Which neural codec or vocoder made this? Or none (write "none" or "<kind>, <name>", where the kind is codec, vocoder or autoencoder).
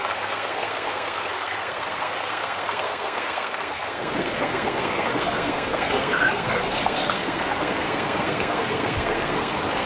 codec, SNAC